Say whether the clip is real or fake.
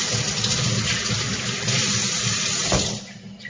real